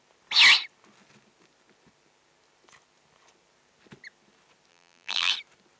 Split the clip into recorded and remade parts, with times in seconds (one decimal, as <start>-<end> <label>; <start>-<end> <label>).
0.0-4.7 recorded; 4.7-5.3 remade; 5.3-5.8 recorded